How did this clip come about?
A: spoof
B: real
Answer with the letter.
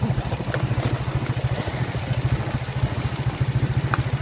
B